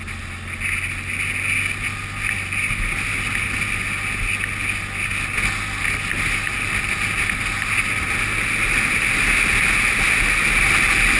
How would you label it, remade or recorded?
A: recorded